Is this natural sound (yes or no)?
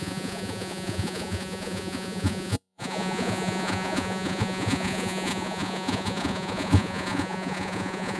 no